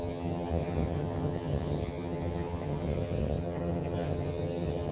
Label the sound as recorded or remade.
remade